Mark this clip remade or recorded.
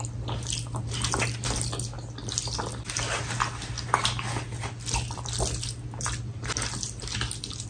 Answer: recorded